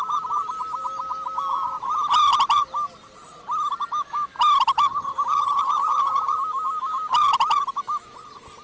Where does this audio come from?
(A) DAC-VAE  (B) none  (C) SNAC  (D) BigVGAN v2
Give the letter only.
B